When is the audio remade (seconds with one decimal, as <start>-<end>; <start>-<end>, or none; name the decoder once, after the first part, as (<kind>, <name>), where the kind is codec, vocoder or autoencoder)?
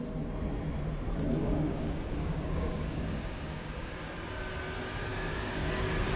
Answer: 1.4-3.9 (codec, DAC); 5.1-5.7